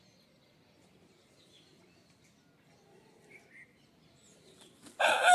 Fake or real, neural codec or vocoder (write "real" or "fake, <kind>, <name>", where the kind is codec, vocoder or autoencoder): real